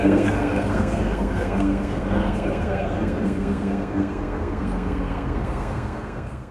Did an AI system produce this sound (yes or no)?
yes